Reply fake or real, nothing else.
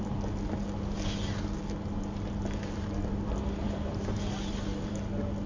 real